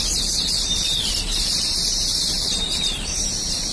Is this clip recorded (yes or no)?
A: yes